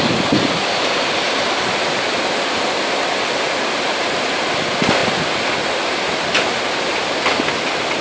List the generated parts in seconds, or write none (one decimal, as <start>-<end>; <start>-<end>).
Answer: none